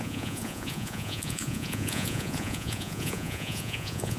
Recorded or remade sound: remade